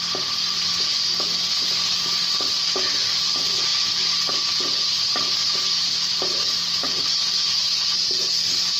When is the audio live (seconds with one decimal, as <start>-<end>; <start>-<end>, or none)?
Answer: 0.0-8.8